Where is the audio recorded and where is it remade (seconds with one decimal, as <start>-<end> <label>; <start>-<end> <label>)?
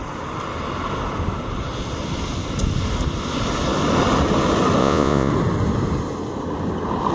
0.0-4.8 recorded; 4.8-5.3 remade; 5.3-7.1 recorded